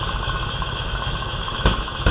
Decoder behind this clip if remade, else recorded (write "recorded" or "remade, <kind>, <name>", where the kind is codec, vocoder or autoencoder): remade, autoencoder, DAC-VAE